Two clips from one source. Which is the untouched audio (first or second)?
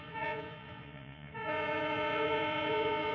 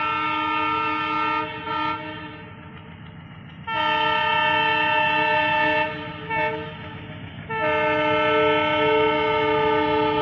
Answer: second